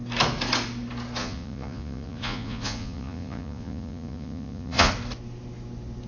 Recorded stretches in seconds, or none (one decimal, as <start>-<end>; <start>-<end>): 0.0-1.2; 4.9-6.1